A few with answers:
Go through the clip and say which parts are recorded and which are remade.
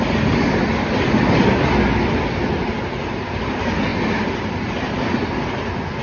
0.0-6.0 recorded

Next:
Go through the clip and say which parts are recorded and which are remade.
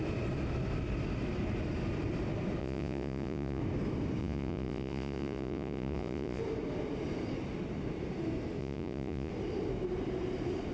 0.0-2.6 recorded; 2.6-3.6 remade; 3.6-4.2 recorded; 4.2-6.4 remade; 6.4-8.6 recorded; 8.6-9.3 remade; 9.3-10.7 recorded